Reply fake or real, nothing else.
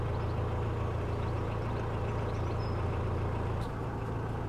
real